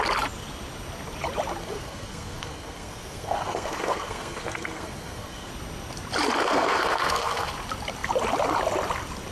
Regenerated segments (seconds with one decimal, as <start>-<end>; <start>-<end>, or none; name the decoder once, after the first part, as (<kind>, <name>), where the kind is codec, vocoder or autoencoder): 1.6-5.5 (codec, SNAC); 6.4-7.5

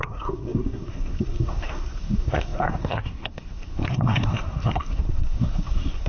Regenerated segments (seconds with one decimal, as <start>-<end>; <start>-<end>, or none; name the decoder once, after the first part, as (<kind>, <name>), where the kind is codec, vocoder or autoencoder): 0.0-6.1 (codec, SNAC)